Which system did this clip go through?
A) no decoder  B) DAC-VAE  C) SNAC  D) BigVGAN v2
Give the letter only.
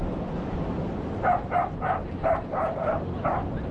A